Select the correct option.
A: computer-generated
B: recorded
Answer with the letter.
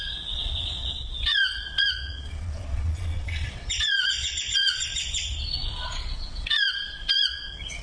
A